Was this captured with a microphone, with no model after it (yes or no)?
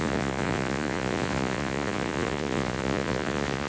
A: no